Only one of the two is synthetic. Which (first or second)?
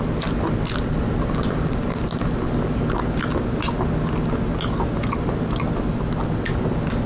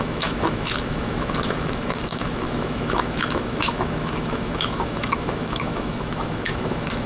second